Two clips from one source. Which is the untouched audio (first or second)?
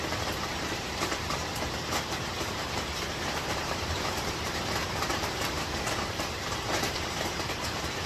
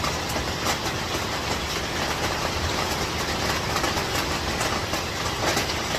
second